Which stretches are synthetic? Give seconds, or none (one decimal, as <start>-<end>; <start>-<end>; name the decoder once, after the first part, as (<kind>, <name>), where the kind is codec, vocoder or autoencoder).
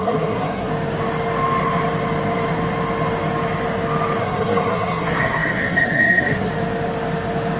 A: 0.0-0.7 (codec, SNAC); 4.2-6.5